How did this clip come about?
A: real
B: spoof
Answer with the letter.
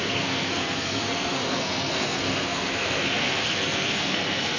B